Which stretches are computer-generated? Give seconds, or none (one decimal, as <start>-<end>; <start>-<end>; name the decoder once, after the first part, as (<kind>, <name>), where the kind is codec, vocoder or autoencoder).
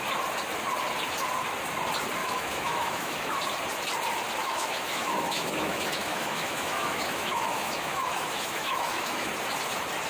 2.2-3.4 (autoencoder, DAC-VAE); 4.4-9.3